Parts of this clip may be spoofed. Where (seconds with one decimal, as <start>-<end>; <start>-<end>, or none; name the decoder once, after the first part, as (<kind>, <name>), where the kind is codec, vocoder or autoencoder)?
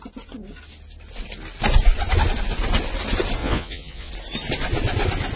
3.4-4.1 (vocoder, Vocos)